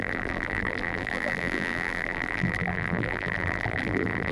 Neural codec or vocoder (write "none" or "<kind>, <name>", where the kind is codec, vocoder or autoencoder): vocoder, BigVGAN v2